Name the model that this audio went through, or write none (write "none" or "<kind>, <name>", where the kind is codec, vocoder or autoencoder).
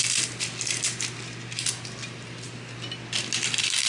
none